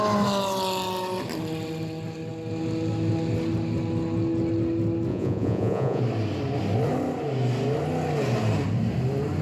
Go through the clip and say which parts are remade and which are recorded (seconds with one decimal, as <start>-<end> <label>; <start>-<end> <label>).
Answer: 0.0-5.1 recorded; 5.1-6.0 remade; 6.0-9.4 recorded